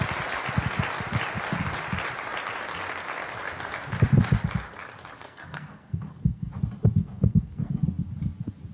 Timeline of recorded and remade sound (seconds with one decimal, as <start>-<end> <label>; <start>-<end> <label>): 0.0-5.2 recorded; 5.2-6.5 remade; 6.5-7.0 recorded; 7.0-7.8 remade; 7.8-8.7 recorded